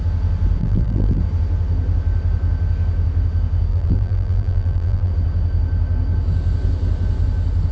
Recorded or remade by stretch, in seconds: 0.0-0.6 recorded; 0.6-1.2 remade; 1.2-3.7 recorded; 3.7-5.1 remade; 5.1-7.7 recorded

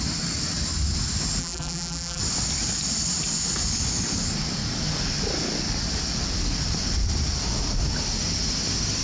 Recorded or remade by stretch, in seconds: 0.0-1.4 recorded; 1.4-2.2 remade; 2.2-9.0 recorded

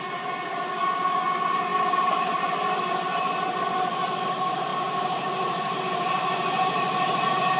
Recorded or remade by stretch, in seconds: 0.0-4.7 recorded; 4.7-5.8 remade; 5.8-7.6 recorded

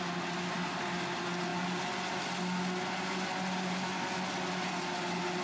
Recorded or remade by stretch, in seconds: 0.0-5.4 recorded

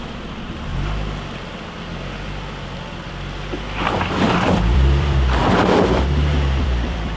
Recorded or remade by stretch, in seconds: 0.0-0.7 remade; 0.7-3.8 recorded; 3.8-7.2 remade

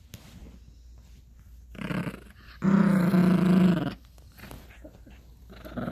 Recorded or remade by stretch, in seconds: 0.0-5.9 recorded

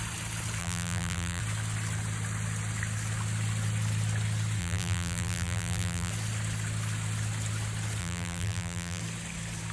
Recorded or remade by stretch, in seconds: 0.0-0.6 recorded; 0.6-1.4 remade; 1.4-4.6 recorded; 4.6-6.1 remade; 6.1-8.0 recorded; 8.0-9.0 remade; 9.0-9.7 recorded

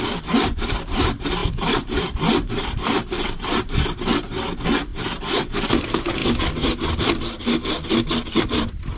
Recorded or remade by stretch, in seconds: 0.0-6.2 remade; 6.2-9.0 recorded